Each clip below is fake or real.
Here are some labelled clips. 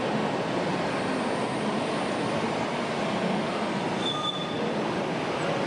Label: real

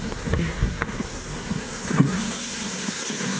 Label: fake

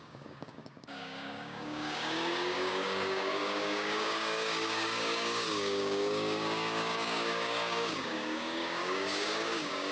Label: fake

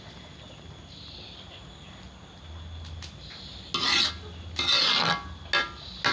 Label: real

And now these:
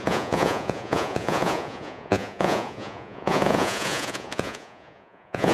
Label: fake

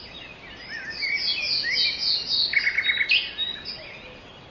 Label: real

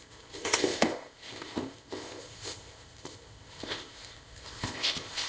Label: fake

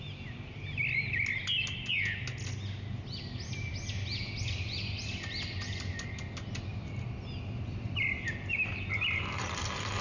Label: real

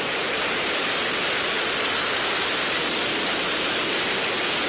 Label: real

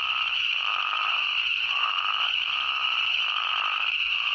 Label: fake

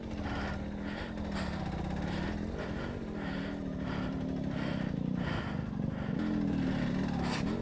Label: real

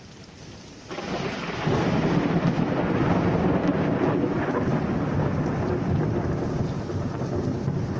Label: real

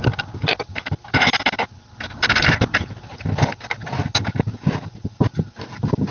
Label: real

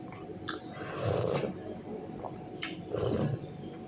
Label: fake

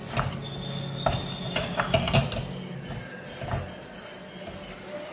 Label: real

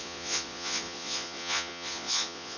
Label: fake